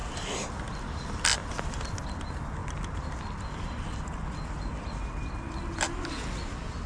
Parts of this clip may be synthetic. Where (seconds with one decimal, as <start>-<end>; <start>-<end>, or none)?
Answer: none